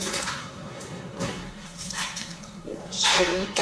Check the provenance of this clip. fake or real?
fake